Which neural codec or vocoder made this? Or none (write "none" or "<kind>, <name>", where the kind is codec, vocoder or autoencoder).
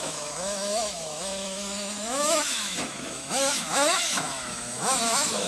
autoencoder, DAC-VAE